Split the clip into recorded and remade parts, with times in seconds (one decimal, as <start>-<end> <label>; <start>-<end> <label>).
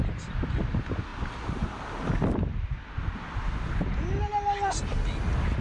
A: 0.0-5.6 recorded